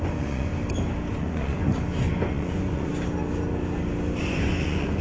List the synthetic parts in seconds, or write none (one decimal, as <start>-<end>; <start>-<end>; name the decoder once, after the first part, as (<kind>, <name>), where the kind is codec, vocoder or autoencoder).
0.0-0.5 (vocoder, Vocos); 1.1-1.7; 2.3-2.9; 4.2-5.0